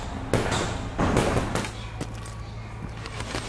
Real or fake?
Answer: real